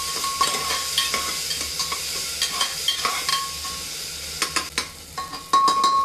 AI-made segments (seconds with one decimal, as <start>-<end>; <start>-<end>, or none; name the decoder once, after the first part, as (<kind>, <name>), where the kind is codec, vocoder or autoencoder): none